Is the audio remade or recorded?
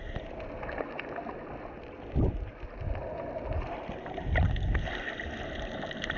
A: recorded